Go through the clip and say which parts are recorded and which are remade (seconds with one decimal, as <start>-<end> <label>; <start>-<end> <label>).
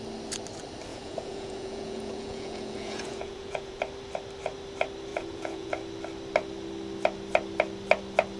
0.0-0.9 recorded; 0.9-3.8 remade; 3.8-5.1 recorded; 5.1-5.7 remade; 5.7-8.4 recorded